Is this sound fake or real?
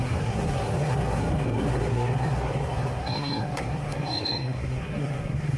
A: fake